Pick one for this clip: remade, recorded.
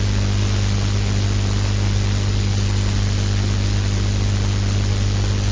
recorded